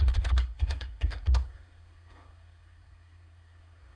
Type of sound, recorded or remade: remade